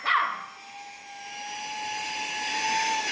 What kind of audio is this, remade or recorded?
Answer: recorded